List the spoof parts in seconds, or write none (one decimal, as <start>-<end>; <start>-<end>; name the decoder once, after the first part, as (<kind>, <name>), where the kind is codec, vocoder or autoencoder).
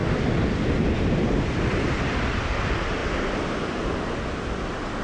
0.0-2.4 (vocoder, BigVGAN v2); 3.0-5.0